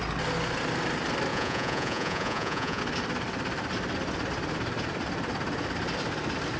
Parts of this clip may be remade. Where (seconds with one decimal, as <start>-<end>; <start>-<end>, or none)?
1.3-2.8